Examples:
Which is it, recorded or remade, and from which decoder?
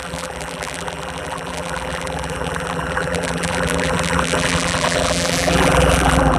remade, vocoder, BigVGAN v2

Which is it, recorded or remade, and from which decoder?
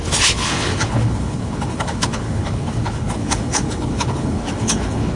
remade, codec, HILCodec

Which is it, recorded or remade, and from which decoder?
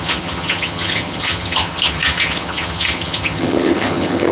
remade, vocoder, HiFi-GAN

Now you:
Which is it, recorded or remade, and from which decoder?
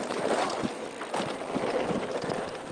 recorded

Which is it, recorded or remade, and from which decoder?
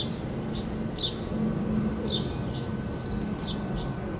recorded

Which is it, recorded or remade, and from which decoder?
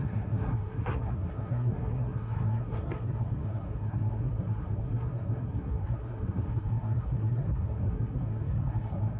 remade, codec, SNAC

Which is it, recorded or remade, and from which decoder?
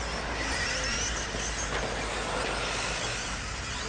recorded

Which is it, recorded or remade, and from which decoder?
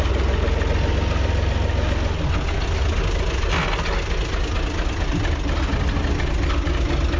recorded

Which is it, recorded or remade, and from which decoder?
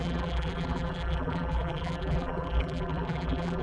remade, vocoder, BigVGAN v2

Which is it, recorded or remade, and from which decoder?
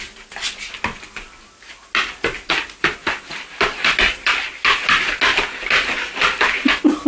recorded